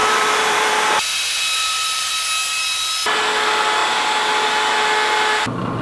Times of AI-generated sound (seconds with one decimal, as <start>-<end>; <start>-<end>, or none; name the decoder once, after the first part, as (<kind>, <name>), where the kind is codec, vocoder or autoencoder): 0.0-0.7 (vocoder, BigVGAN v2); 1.1-2.1